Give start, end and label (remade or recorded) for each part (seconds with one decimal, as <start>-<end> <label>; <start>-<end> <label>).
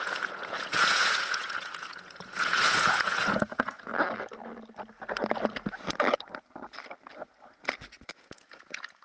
0.0-3.9 remade; 3.9-8.1 recorded; 8.1-9.0 remade